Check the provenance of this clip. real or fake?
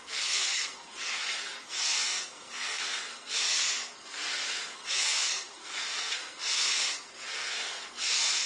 fake